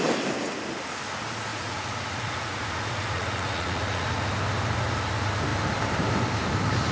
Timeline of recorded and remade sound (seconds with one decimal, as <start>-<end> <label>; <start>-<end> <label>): 0.0-1.5 recorded; 1.5-4.1 remade; 4.1-6.9 recorded

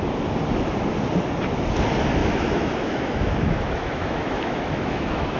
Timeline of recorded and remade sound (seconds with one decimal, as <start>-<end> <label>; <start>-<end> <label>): 0.0-2.2 recorded; 2.2-5.4 remade